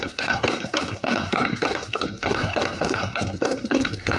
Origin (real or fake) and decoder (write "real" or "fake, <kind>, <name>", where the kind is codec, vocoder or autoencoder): fake, codec, SNAC